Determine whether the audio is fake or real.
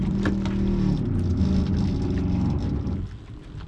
real